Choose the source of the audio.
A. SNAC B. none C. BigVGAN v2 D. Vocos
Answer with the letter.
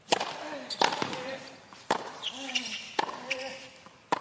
B